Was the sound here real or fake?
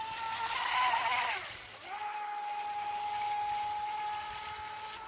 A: real